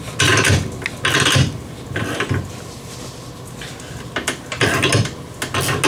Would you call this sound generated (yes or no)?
no